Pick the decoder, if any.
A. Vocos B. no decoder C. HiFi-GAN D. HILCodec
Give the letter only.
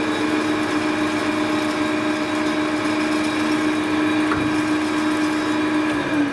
B